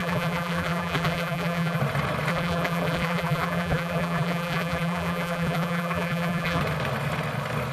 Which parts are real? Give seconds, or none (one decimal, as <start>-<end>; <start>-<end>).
1.8-2.3; 6.6-7.7